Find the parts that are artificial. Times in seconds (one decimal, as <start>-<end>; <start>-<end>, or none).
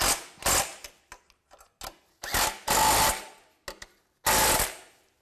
none